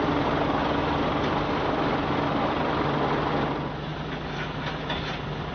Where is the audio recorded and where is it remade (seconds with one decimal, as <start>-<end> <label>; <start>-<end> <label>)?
0.0-5.5 recorded